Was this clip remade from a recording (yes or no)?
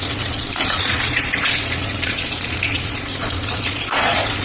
yes